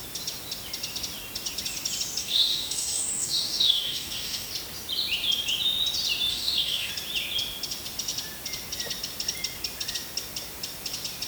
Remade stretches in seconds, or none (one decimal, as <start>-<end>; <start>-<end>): 2.2-4.5; 6.3-6.9

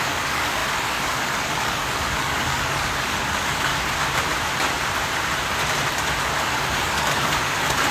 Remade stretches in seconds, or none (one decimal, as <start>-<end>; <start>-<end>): 0.0-3.7; 6.2-7.9

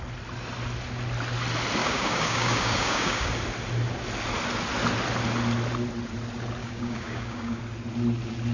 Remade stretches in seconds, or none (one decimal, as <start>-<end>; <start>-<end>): 1.8-3.3; 6.6-7.6

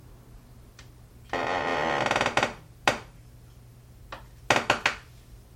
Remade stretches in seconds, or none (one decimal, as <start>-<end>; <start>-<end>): none

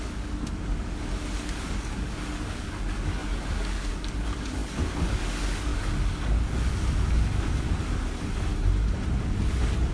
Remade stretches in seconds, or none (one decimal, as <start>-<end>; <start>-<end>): 0.0-8.5; 9.4-9.9

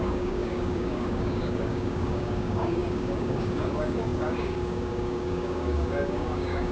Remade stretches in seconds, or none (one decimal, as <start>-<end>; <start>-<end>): 0.0-6.7